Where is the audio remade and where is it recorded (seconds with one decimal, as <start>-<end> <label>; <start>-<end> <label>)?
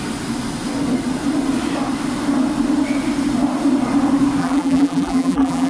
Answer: 0.0-4.4 recorded; 4.4-5.7 remade